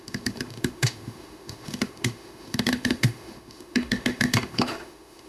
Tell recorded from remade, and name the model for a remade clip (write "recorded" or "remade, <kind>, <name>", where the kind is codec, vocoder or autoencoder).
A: remade, autoencoder, DAC-VAE